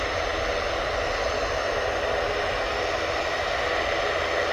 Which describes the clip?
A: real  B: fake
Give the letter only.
A